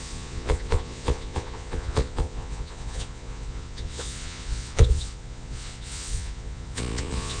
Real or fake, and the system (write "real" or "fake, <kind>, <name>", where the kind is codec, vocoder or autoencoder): fake, vocoder, Vocos